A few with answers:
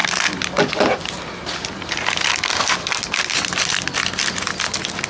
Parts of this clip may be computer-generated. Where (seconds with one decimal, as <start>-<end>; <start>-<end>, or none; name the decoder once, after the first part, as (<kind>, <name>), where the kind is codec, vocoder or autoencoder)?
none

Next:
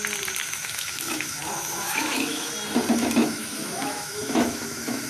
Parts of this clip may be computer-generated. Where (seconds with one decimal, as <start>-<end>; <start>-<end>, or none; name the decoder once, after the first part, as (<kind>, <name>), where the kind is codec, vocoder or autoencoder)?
0.4-2.5 (autoencoder, DAC-VAE); 3.2-5.1

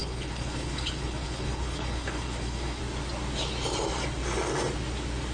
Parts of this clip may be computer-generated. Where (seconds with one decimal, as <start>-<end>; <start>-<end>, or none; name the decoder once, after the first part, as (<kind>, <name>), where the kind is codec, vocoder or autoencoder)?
0.0-2.8 (codec, HILCodec)

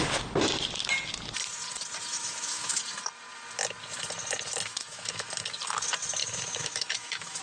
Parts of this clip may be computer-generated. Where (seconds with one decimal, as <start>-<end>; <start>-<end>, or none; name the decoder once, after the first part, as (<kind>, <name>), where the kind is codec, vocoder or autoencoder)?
2.1-2.8 (autoencoder, DAC-VAE); 4.7-5.3; 6.2-7.4

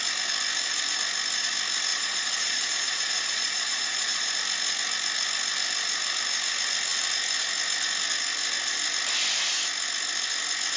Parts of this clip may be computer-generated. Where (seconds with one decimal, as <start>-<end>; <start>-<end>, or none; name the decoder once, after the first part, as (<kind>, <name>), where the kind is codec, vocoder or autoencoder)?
1.9-4.3 (vocoder, Vocos)